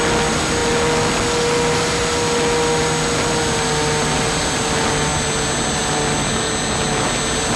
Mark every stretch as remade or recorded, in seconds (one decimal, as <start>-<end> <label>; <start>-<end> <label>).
0.0-7.6 recorded